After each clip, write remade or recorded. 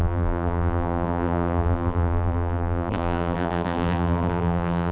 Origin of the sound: remade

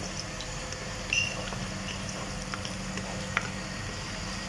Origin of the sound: recorded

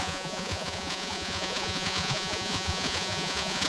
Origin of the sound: remade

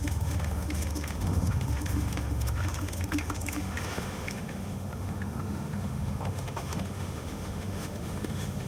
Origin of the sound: remade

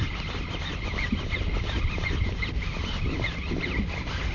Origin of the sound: recorded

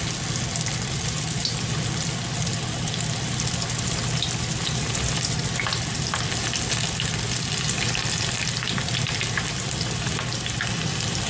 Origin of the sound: recorded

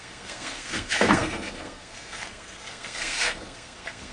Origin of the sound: remade